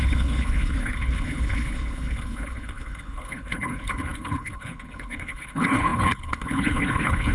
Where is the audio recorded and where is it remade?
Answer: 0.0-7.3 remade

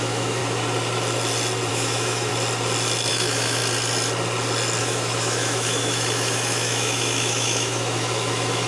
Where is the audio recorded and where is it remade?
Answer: 0.0-0.4 remade; 0.4-1.7 recorded; 1.7-2.3 remade; 2.3-3.1 recorded; 3.1-3.6 remade; 3.6-4.8 recorded; 4.8-8.7 remade

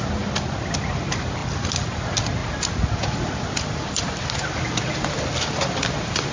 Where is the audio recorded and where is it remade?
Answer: 0.0-6.3 recorded